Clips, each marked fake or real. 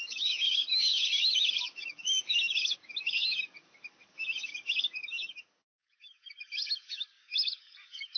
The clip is fake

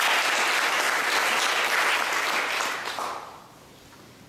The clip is real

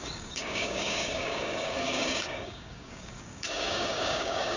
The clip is fake